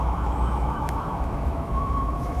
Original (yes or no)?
no